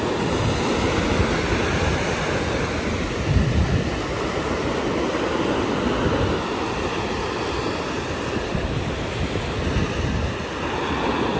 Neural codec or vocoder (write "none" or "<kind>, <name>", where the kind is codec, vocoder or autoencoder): none